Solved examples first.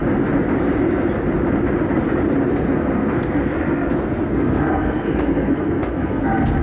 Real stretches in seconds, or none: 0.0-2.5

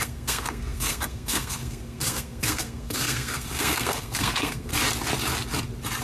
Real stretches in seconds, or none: 4.7-6.0

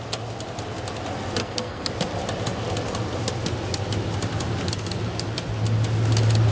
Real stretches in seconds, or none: 0.0-1.4; 1.9-6.5

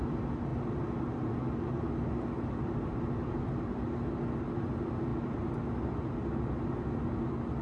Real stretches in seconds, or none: 0.0-7.6